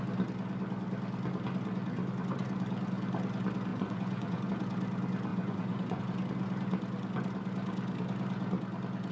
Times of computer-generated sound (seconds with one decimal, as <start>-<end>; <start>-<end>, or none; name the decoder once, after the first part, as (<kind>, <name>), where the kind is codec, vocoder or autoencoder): 3.7-4.5 (vocoder, Vocos); 5.3-6.0